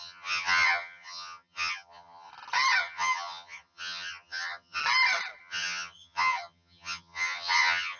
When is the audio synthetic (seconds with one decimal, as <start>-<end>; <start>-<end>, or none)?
0.0-2.3; 2.8-4.8; 5.4-8.0